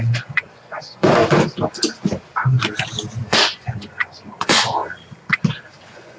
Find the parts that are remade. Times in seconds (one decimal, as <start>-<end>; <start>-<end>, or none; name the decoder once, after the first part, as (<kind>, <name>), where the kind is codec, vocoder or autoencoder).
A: 0.0-1.2 (vocoder, Vocos); 3.2-4.8; 5.8-6.2